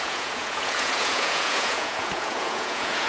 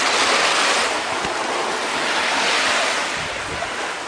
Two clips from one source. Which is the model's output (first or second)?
first